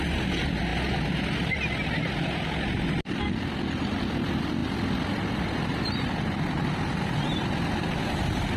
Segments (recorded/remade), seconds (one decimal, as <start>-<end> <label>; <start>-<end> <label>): 0.0-8.6 recorded